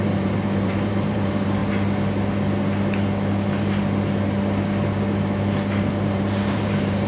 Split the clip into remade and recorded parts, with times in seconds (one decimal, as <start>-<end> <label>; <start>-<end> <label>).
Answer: 0.0-1.6 remade; 1.6-5.9 recorded; 5.9-7.1 remade